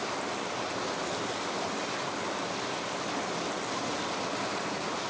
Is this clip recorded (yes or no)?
yes